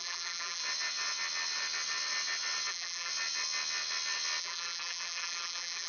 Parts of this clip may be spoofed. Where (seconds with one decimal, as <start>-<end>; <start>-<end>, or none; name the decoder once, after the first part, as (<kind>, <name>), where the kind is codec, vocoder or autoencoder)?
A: 0.0-0.6 (vocoder, BigVGAN v2); 2.7-3.1; 4.4-5.9